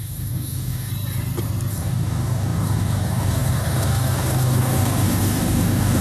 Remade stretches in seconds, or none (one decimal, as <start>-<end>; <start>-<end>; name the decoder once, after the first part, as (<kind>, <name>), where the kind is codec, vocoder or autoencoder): 0.0-0.9 (codec, DAC); 1.7-6.0